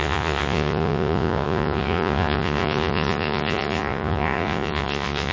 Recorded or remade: remade